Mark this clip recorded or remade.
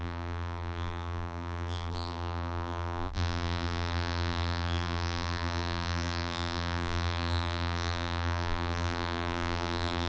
remade